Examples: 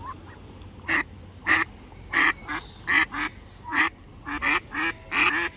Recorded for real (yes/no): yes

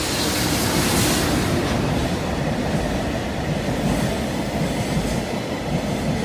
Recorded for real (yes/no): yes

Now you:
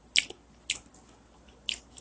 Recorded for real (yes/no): yes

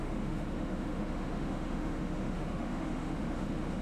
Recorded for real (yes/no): no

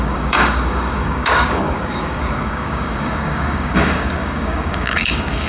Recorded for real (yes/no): no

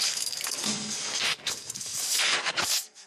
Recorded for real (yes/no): no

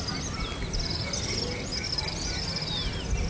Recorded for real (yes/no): yes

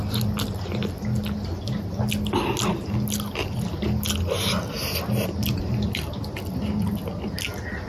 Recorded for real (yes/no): yes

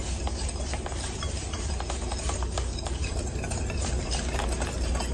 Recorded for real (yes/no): yes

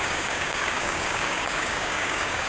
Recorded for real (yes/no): no